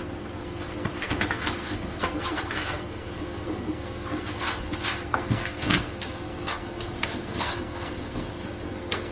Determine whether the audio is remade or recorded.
remade